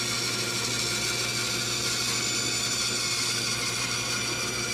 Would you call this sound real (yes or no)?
yes